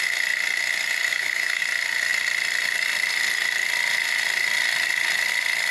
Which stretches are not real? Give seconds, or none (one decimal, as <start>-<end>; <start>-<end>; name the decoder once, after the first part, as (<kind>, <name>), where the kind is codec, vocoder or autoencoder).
1.1-1.6 (autoencoder, DAC-VAE)